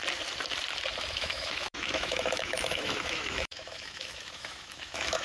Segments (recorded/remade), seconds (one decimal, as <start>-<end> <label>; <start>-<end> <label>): 0.0-1.1 recorded; 1.1-5.2 remade